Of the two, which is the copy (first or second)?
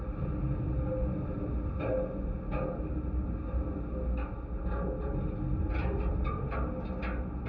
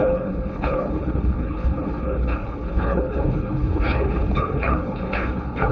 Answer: second